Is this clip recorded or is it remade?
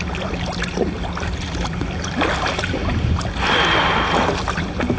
recorded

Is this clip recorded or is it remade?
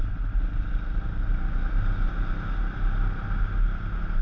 recorded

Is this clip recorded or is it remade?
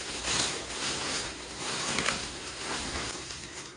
remade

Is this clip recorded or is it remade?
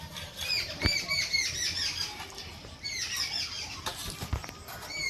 recorded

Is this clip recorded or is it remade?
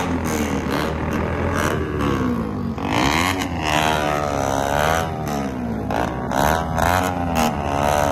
recorded